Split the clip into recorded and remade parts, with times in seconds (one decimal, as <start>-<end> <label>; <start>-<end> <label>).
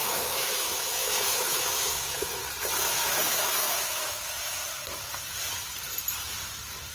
0.0-2.4 remade; 2.4-2.9 recorded; 2.9-4.6 remade; 4.6-6.9 recorded